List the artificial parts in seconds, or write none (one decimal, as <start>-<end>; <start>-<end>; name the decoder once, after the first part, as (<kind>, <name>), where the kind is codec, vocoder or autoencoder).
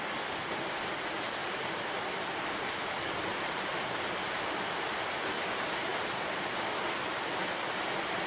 1.4-3.9 (vocoder, BigVGAN v2)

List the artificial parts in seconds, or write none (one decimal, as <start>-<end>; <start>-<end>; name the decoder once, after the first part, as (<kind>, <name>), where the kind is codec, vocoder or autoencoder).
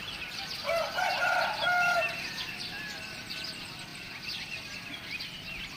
3.9-4.6 (vocoder, BigVGAN v2)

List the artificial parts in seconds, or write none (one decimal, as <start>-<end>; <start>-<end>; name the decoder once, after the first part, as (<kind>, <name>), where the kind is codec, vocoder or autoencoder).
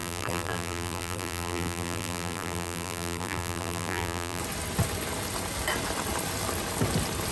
0.0-4.4 (vocoder, BigVGAN v2)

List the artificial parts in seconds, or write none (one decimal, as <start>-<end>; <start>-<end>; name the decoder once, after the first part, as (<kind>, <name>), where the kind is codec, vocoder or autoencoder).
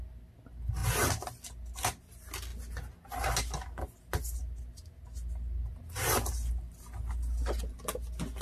none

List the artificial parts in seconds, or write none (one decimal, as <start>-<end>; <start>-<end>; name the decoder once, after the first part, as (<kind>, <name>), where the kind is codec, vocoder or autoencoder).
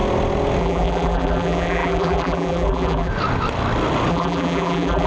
0.6-3.1 (vocoder, BigVGAN v2); 4.1-5.1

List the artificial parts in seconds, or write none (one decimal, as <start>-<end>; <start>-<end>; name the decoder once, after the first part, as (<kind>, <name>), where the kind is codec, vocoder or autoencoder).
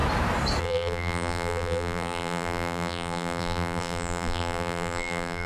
0.6-5.5 (vocoder, BigVGAN v2)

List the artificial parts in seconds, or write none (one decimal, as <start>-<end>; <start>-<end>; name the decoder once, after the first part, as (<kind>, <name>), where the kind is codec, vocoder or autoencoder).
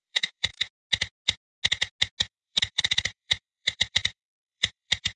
0.0-0.5 (vocoder, BigVGAN v2); 2.3-5.2